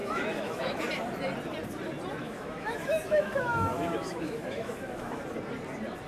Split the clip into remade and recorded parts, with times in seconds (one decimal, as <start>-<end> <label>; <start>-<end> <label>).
0.0-0.8 remade; 0.8-2.2 recorded; 2.2-5.2 remade; 5.2-6.1 recorded